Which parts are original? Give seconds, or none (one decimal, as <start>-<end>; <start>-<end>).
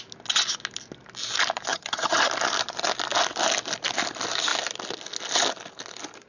0.0-1.7; 2.3-6.3